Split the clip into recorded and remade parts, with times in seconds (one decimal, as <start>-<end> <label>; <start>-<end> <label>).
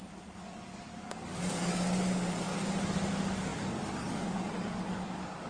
0.0-2.5 remade; 2.5-3.1 recorded; 3.1-5.5 remade